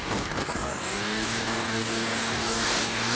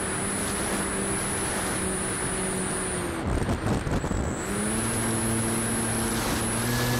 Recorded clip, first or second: second